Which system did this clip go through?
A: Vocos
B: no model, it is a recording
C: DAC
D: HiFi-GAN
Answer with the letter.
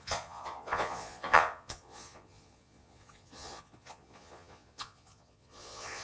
A